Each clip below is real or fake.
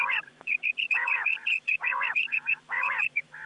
fake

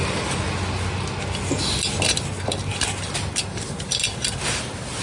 real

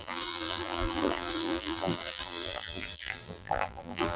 fake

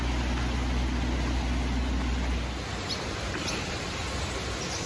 real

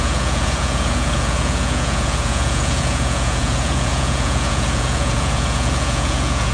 fake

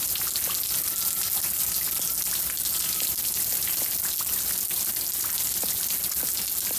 real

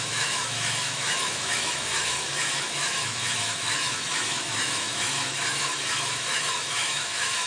fake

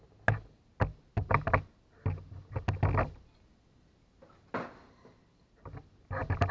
real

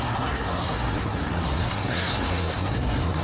fake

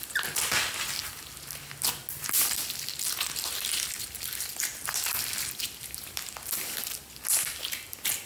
real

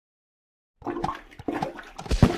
real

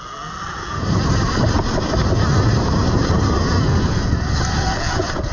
real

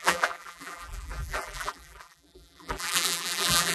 fake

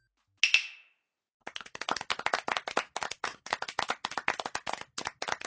real